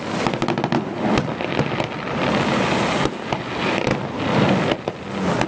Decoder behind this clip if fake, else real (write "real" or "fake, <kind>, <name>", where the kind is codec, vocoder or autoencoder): real